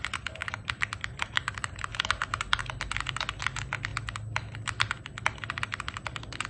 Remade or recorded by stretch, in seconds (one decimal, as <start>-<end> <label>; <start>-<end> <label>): 0.0-0.4 recorded; 0.4-1.4 remade; 1.4-1.9 recorded; 1.9-2.6 remade; 2.6-6.5 recorded